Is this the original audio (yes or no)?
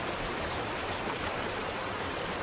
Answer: no